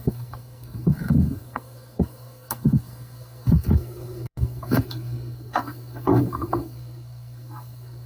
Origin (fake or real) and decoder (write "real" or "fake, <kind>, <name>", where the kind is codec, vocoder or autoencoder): fake, codec, SNAC